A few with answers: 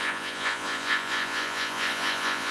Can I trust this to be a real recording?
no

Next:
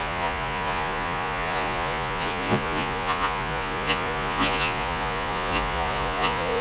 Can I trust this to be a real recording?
no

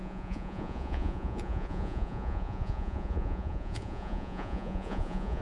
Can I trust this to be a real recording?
no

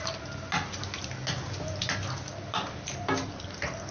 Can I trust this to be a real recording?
yes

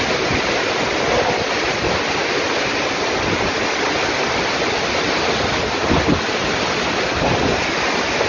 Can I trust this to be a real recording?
yes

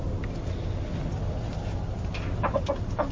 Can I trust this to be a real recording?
yes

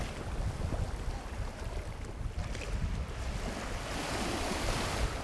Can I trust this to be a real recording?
yes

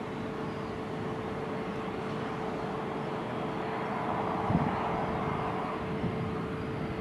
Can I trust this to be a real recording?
yes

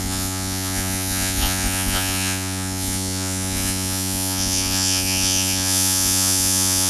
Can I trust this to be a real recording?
no